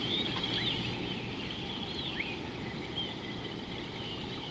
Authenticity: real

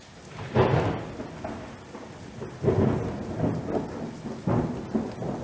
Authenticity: real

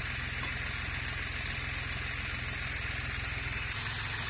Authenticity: real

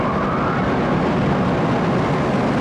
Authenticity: real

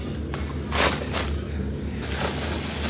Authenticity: real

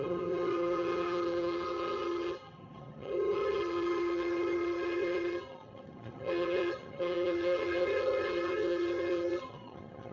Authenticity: fake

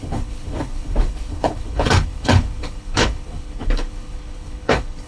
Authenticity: fake